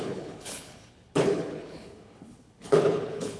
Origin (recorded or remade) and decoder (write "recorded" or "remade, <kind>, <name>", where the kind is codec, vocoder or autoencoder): remade, codec, HILCodec